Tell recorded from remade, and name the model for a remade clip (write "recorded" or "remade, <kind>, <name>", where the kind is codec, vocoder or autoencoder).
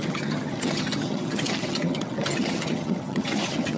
remade, vocoder, HiFi-GAN